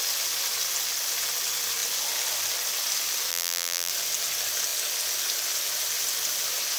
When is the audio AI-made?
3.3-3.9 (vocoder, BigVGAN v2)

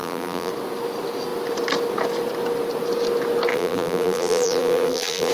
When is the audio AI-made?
0.0-0.5 (vocoder, BigVGAN v2); 3.5-5.3

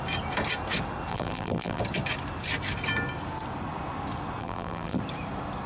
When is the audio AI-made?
1.1-1.8 (vocoder, BigVGAN v2); 4.4-5.0

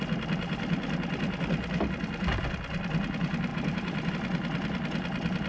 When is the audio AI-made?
3.5-4.1 (vocoder, BigVGAN v2)

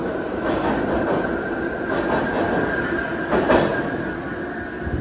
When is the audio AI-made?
0.0-0.6 (vocoder, BigVGAN v2); 3.7-4.3

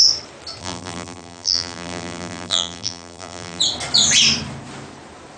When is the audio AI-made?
0.6-3.6 (vocoder, BigVGAN v2)

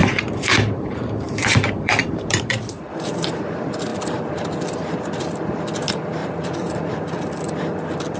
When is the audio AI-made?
0.0-3.4 (vocoder, BigVGAN v2); 6.2-7.2